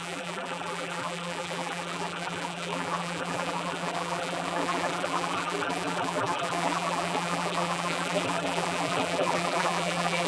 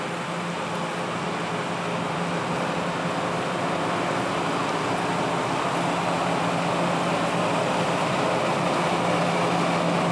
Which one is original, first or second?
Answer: second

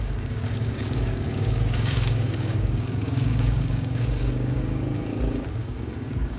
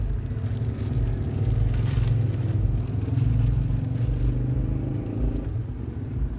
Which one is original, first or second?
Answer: second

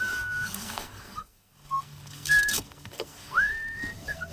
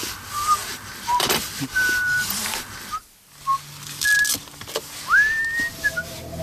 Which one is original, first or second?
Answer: second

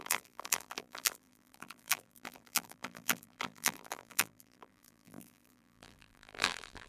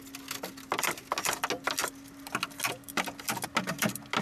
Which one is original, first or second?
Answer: second